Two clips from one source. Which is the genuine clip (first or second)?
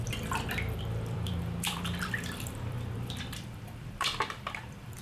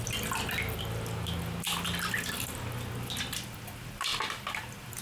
second